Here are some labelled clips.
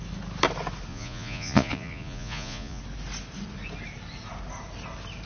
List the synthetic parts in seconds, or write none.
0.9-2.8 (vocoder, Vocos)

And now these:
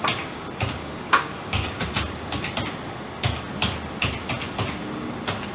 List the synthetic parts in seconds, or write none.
0.8-1.8 (codec, DAC)